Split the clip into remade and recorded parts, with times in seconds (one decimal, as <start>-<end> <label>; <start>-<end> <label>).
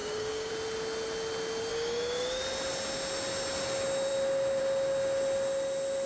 0.0-0.5 remade; 0.5-1.7 recorded; 1.7-2.4 remade; 2.4-6.1 recorded